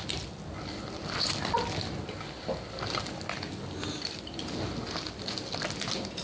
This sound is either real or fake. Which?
real